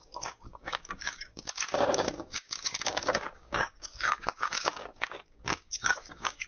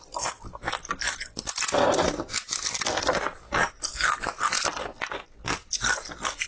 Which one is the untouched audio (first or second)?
second